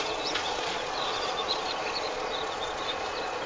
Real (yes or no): no